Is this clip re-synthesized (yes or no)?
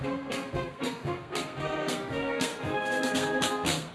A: yes